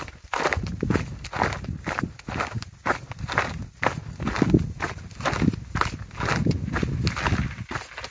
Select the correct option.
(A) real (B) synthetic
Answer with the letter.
A